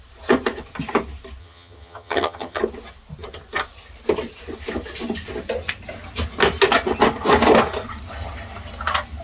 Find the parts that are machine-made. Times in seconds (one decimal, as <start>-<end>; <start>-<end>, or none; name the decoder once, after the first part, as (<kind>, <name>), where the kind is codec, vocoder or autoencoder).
1.4-2.6 (vocoder, HiFi-GAN)

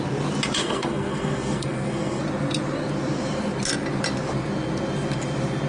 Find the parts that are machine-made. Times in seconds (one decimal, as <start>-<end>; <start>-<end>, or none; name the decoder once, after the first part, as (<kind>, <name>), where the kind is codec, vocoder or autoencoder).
0.6-2.2 (codec, SNAC)

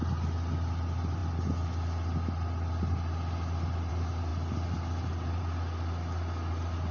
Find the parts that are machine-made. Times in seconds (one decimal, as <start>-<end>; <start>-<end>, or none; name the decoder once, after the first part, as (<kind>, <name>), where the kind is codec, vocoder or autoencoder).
none

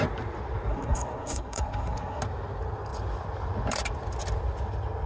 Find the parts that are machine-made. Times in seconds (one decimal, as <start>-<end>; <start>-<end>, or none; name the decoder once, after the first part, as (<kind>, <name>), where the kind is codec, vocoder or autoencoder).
0.7-2.2 (codec, SNAC)